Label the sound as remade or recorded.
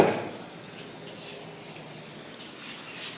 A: recorded